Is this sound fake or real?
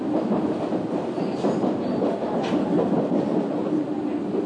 real